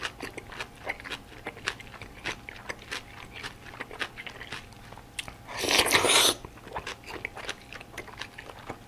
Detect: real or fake real